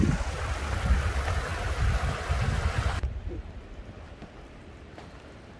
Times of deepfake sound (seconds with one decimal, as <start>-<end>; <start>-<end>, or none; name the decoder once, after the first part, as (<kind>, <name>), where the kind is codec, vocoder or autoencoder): none